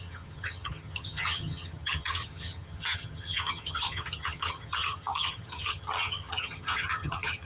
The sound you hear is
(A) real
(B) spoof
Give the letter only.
B